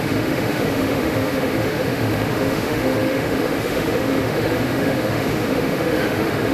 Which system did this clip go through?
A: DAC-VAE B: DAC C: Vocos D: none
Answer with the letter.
A